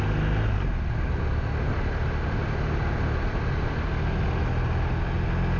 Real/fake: real